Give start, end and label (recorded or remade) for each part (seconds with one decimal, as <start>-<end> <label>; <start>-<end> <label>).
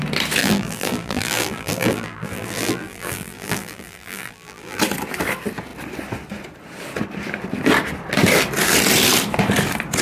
0.0-0.4 recorded; 0.4-4.8 remade; 4.8-10.0 recorded